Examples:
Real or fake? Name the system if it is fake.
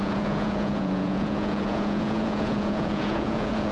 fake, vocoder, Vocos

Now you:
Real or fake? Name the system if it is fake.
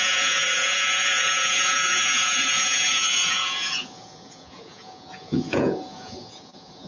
fake, vocoder, Vocos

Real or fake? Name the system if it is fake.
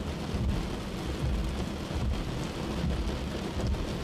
real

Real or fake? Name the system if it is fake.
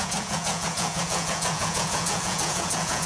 fake, vocoder, Vocos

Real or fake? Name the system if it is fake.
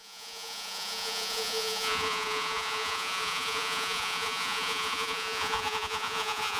fake, vocoder, Vocos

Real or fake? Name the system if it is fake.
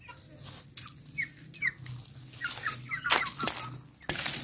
real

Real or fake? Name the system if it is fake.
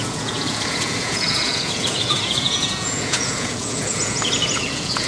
fake, vocoder, Vocos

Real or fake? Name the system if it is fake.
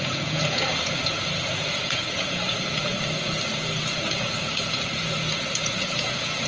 fake, vocoder, Vocos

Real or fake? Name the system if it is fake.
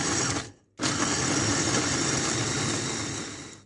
real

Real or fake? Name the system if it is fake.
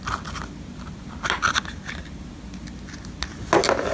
real